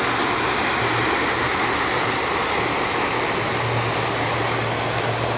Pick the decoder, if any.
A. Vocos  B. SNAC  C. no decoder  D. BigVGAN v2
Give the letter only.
C